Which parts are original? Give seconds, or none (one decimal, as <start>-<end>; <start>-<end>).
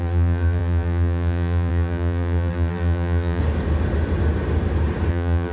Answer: 3.4-5.1